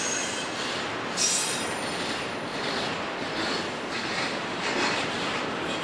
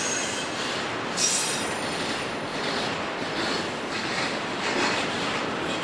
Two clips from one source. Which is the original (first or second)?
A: first